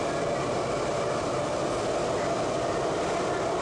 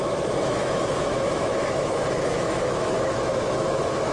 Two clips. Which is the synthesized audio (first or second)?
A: second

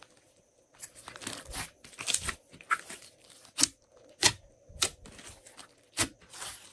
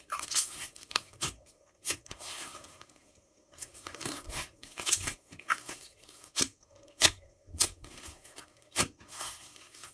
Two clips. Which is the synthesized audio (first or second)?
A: second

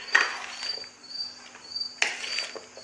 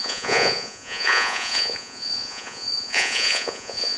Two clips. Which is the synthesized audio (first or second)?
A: second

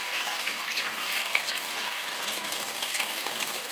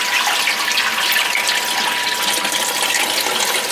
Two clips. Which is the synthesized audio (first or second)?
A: first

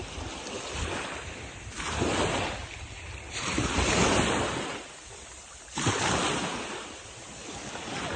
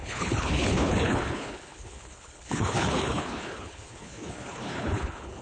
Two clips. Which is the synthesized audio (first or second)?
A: second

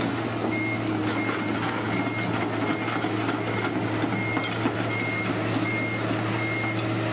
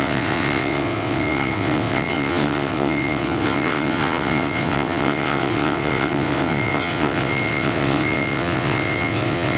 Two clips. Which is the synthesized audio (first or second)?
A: second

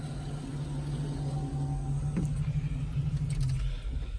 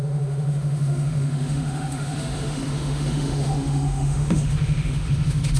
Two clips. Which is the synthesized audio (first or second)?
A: second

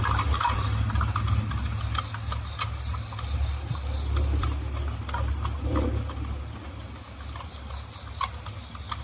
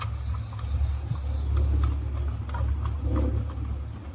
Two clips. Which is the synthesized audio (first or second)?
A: first